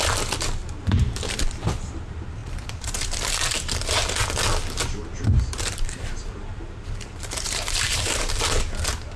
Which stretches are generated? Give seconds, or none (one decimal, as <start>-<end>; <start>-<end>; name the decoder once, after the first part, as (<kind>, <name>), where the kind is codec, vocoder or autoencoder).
0.6-1.4 (vocoder, BigVGAN v2); 2.4-3.9; 5.1-8.3